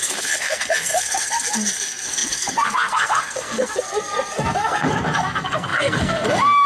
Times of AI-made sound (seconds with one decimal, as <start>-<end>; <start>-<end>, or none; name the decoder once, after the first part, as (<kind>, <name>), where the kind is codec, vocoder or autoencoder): 0.0-6.7 (codec, SNAC)